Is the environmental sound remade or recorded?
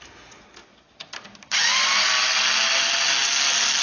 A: recorded